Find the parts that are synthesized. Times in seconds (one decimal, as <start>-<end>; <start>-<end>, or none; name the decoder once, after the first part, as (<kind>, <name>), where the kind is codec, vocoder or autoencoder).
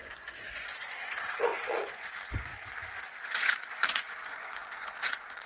0.0-5.5 (vocoder, Vocos)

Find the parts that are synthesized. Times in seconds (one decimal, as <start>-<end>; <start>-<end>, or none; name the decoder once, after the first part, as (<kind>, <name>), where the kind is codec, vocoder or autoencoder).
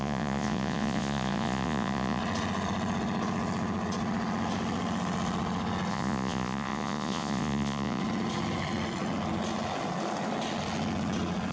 0.0-2.2 (vocoder, Vocos); 5.9-8.0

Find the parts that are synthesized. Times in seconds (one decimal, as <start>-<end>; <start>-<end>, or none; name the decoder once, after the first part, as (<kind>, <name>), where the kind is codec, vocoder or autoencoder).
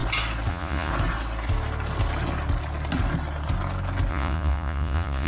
0.5-0.9 (vocoder, Vocos); 4.1-5.3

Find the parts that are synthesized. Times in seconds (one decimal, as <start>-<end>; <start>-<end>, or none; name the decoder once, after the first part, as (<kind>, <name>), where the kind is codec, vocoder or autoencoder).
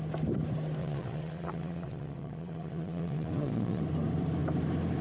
0.8-3.8 (vocoder, Vocos)